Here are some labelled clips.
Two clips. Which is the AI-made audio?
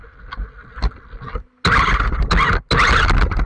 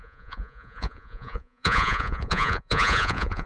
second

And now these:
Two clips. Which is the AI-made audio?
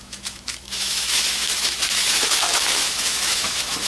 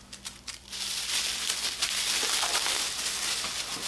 first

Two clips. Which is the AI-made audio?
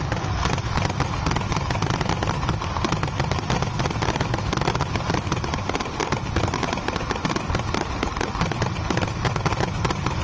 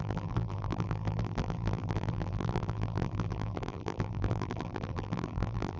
second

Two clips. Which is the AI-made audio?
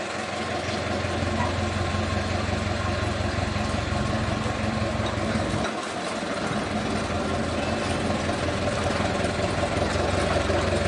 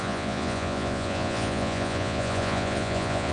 second